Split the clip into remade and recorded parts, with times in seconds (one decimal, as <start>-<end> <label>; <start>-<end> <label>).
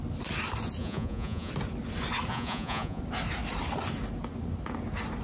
0.0-0.8 recorded; 0.8-1.5 remade; 1.5-2.3 recorded; 2.3-3.0 remade; 3.0-5.2 recorded